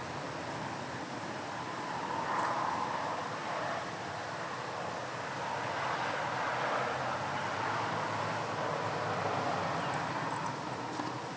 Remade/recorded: recorded